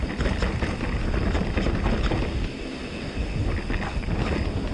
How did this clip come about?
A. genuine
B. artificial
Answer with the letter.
A